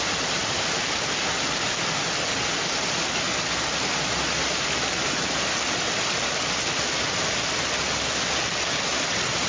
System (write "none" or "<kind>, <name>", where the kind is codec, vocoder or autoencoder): none